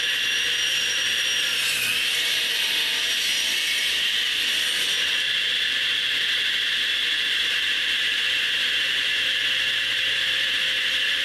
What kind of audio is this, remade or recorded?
remade